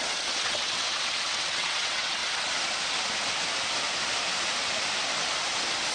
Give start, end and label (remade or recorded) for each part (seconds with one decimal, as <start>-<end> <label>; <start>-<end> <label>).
0.0-2.2 remade; 2.2-5.9 recorded

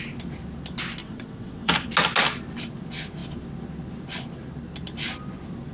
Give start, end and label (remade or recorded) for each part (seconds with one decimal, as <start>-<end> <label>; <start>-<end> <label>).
0.0-1.0 recorded; 1.0-1.7 remade; 1.7-5.7 recorded

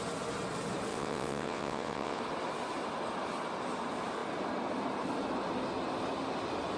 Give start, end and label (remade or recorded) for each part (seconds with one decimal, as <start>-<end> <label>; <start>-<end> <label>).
0.0-0.9 recorded; 0.9-2.2 remade; 2.2-6.8 recorded

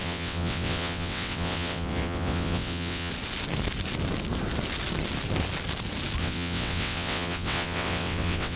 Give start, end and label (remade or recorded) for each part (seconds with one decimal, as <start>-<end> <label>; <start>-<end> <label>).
0.0-3.1 remade; 3.1-6.2 recorded; 6.2-8.6 remade